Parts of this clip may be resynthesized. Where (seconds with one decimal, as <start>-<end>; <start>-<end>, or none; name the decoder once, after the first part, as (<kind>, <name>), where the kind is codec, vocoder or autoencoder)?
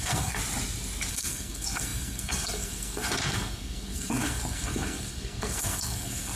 0.0-0.4 (codec, SNAC); 1.1-6.4